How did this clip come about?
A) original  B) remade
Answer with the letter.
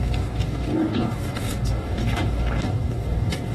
B